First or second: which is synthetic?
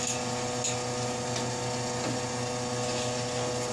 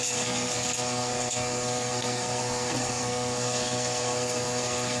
second